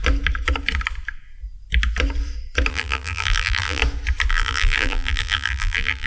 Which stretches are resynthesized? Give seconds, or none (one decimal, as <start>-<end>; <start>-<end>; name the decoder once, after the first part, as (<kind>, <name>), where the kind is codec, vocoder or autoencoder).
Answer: 2.7-3.8 (vocoder, BigVGAN v2); 4.3-6.1